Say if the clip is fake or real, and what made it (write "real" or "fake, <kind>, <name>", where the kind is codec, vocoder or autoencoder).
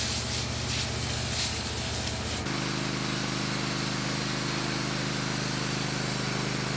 real